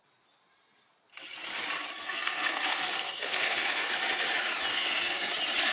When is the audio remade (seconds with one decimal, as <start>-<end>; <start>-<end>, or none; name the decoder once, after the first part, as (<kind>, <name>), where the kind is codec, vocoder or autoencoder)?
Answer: 2.0-4.0 (codec, SNAC); 4.7-5.3